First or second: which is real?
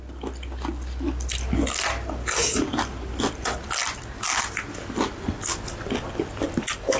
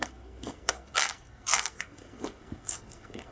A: first